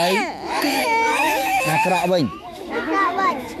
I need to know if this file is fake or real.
fake